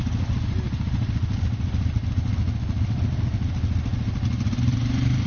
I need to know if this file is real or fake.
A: real